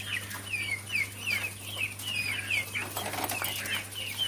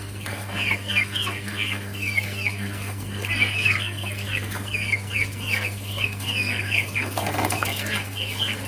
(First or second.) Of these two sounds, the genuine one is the first